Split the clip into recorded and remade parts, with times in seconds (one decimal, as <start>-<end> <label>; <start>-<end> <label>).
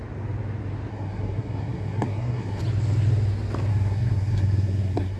0.0-0.9 recorded; 0.9-2.6 remade; 2.6-3.7 recorded; 3.7-5.2 remade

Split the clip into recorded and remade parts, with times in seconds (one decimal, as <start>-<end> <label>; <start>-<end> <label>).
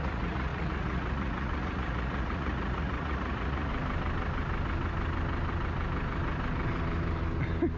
0.0-3.7 remade; 3.7-7.8 recorded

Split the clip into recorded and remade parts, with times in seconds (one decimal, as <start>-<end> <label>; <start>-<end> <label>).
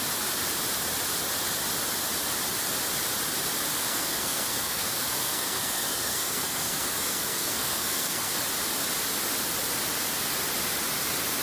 0.0-3.7 recorded; 3.7-8.3 remade; 8.3-11.4 recorded